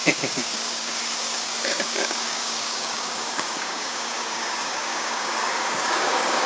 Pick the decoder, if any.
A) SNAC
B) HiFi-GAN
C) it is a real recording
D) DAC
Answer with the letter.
D